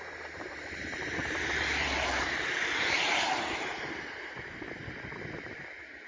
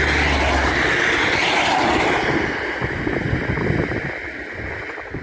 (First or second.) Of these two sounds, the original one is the second